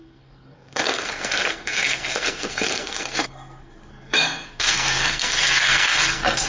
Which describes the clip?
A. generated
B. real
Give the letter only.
A